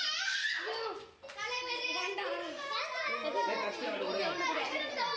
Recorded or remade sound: recorded